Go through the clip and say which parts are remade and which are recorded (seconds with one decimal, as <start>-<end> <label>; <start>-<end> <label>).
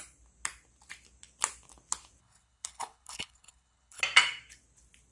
0.0-2.2 recorded; 2.2-4.0 remade; 4.0-5.1 recorded